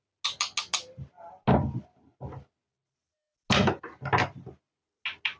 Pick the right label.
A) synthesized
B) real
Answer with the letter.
B